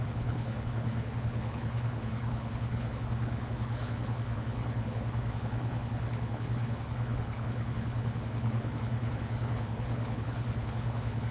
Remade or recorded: remade